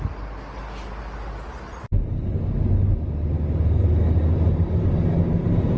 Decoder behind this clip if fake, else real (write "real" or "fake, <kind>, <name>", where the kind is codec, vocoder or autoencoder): real